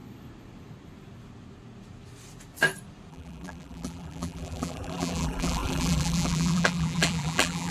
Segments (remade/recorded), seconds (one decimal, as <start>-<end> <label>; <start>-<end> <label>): 0.0-3.1 recorded; 3.1-7.7 remade